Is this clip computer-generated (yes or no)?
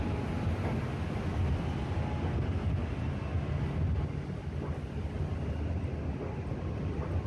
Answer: no